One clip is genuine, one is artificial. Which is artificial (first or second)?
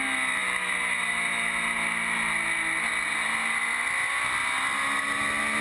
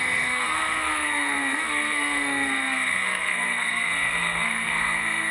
second